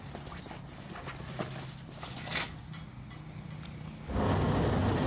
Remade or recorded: recorded